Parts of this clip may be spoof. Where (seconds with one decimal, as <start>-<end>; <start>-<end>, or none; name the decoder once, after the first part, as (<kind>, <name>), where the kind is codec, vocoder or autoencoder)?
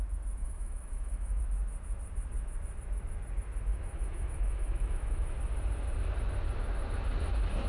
0.4-1.4 (autoencoder, DAC-VAE); 3.7-5.3